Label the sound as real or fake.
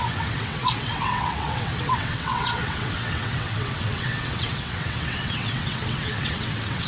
fake